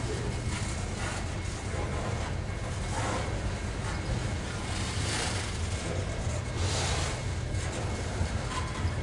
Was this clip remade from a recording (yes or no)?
no